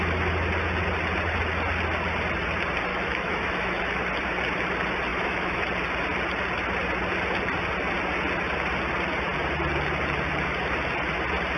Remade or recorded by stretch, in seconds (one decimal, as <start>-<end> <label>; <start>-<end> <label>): 0.0-2.9 recorded; 2.9-4.0 remade; 4.0-5.1 recorded; 5.1-5.7 remade; 5.7-11.6 recorded